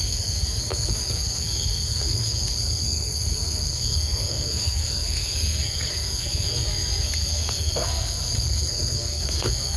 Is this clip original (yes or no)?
no